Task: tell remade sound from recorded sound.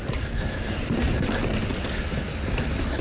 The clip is recorded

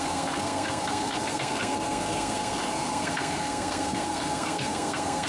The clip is remade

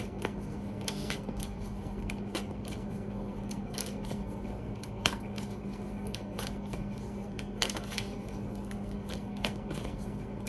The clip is remade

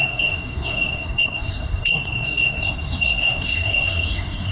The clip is remade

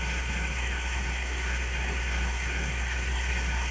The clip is remade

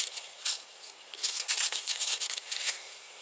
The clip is remade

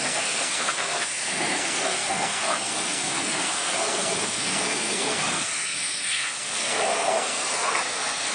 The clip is remade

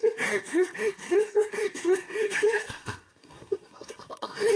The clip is remade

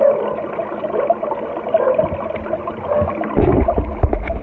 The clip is recorded